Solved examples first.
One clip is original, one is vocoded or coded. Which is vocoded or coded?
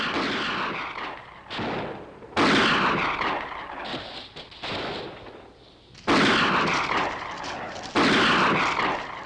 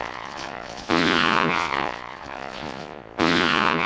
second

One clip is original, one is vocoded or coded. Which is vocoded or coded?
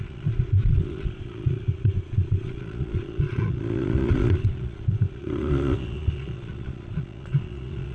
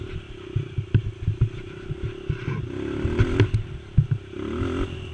first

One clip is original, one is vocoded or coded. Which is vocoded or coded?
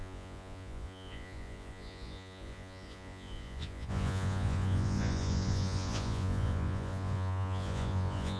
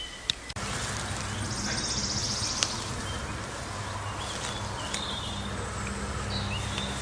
first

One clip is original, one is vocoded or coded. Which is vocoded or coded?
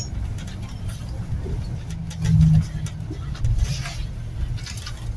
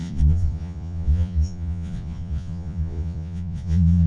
second